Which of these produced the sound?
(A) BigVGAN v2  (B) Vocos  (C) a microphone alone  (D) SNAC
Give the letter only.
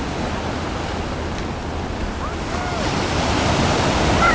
C